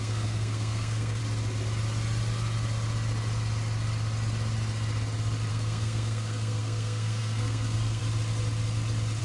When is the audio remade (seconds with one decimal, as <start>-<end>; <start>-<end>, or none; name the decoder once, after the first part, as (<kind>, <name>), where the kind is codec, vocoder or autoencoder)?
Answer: 0.0-1.2 (codec, SNAC); 5.5-8.0